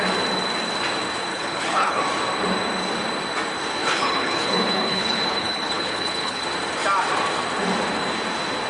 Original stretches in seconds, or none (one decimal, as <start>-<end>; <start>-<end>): 0.0-1.3; 2.0-3.8; 6.4-8.7

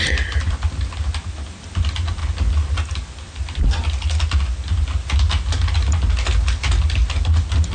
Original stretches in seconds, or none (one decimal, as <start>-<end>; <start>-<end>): 0.0-7.7

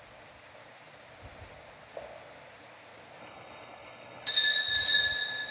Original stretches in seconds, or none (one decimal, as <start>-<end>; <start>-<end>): 0.0-3.2; 4.3-5.5

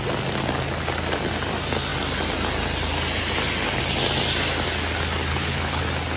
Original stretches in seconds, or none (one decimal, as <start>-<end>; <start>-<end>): 0.0-5.3; 5.8-6.2

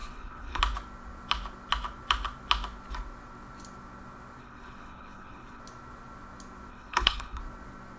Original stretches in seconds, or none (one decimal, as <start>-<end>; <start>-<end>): 0.6-4.4; 5.6-6.7; 7.4-8.0